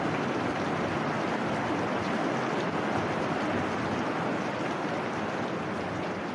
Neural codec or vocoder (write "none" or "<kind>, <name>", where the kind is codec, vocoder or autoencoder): none